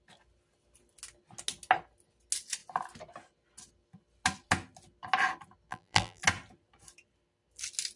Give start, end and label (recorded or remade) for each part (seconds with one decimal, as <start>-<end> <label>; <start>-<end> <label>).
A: 0.0-5.7 recorded; 5.7-6.2 remade; 6.2-8.0 recorded